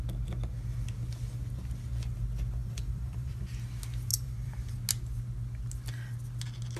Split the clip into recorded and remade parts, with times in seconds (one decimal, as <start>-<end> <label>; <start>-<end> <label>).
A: 0.0-2.6 recorded; 2.6-3.4 remade; 3.4-4.1 recorded; 4.1-4.7 remade; 4.7-6.8 recorded